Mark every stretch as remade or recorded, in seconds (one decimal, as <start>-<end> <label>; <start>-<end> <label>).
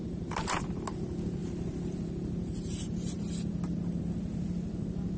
0.0-5.2 recorded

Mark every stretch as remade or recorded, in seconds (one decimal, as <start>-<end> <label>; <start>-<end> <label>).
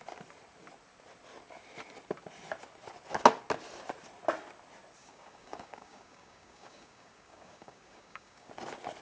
0.0-5.0 recorded; 5.0-8.5 remade; 8.5-9.0 recorded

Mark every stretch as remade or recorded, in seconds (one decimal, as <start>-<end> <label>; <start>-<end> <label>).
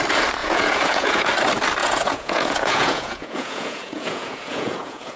0.0-0.4 recorded; 0.4-1.3 remade; 1.3-1.8 recorded; 1.8-5.2 remade